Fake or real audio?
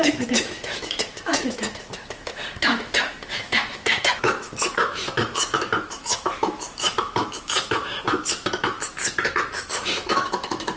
fake